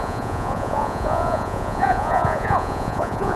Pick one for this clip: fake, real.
fake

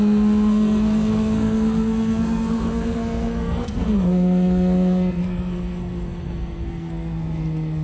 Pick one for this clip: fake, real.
fake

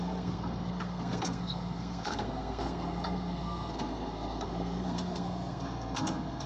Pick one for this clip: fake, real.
fake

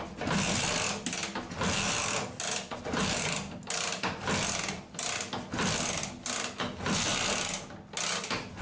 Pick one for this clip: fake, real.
real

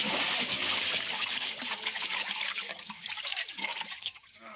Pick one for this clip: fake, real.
fake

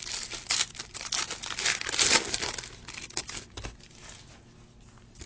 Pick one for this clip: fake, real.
real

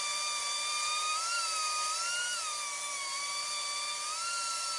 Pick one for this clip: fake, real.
real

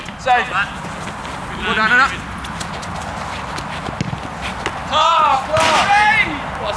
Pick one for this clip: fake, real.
real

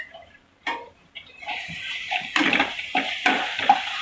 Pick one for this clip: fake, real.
fake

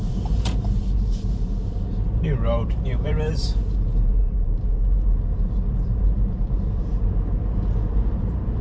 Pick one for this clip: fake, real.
fake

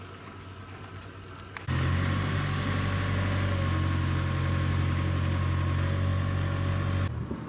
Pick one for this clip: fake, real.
real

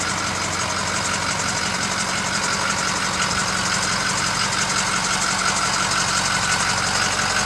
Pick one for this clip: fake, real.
real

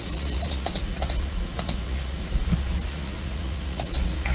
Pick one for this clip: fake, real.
fake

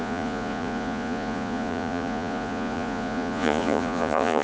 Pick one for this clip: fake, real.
fake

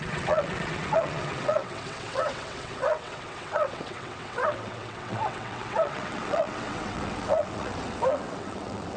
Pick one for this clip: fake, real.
fake